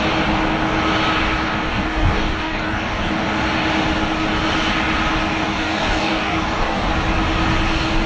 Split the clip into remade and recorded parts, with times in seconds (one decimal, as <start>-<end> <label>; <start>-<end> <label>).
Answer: 0.0-1.7 recorded; 1.7-3.1 remade; 3.1-5.4 recorded; 5.4-6.9 remade; 6.9-8.1 recorded